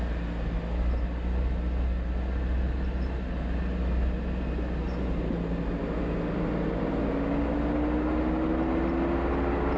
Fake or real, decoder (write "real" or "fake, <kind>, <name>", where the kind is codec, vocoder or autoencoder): real